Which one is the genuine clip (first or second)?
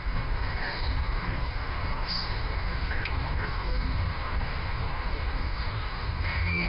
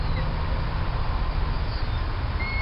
second